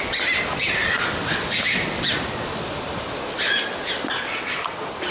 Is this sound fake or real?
real